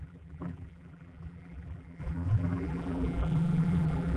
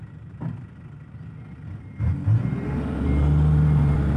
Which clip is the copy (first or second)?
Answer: first